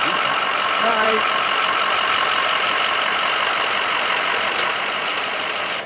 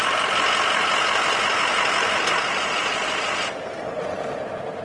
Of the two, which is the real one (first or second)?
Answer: second